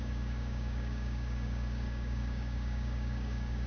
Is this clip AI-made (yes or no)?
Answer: yes